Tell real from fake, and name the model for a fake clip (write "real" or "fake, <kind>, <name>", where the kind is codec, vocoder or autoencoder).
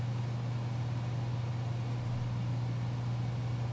real